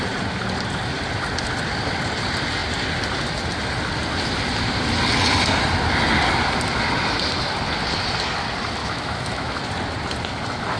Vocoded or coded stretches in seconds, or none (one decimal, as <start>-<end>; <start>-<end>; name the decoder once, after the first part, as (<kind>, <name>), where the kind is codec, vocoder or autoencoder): 8.8-9.6 (autoencoder, DAC-VAE)